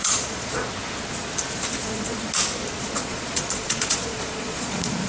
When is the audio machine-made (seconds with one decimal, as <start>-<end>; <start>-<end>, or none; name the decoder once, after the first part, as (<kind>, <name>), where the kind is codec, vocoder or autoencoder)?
0.0-0.6 (vocoder, Vocos); 1.8-2.3; 2.8-5.1